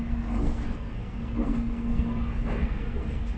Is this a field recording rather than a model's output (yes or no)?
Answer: no